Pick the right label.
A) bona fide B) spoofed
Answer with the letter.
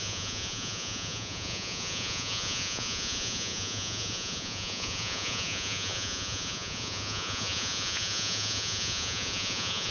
B